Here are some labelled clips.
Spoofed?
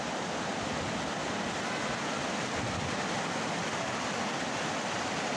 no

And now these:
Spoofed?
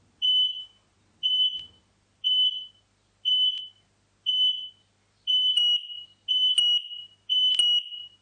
no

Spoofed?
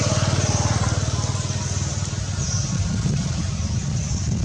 no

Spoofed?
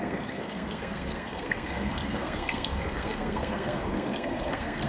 yes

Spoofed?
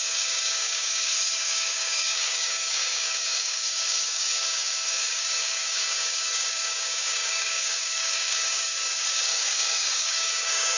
yes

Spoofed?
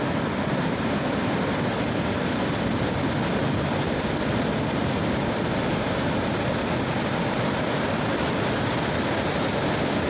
no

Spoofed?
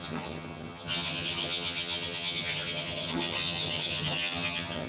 yes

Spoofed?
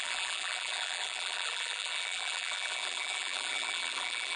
yes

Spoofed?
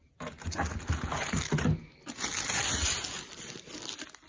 no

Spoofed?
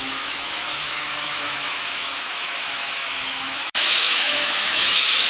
yes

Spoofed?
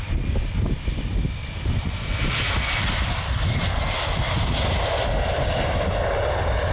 no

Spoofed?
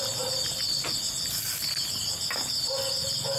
no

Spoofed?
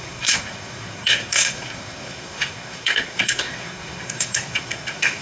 yes